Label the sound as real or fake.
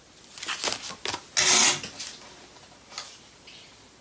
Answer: real